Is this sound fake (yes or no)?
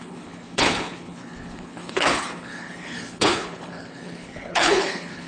yes